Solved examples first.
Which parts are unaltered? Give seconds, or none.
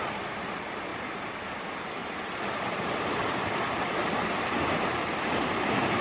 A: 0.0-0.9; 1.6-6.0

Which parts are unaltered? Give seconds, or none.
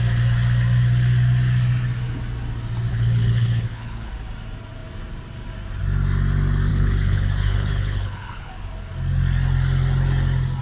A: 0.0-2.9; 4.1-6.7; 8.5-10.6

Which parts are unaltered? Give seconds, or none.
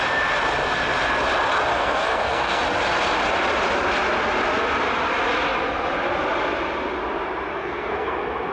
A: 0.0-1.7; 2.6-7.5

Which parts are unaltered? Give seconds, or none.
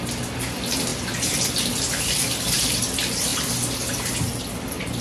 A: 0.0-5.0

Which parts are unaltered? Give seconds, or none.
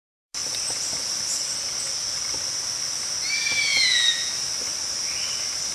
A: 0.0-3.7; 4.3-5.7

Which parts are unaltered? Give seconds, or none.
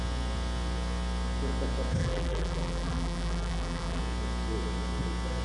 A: 0.0-2.0; 4.0-5.4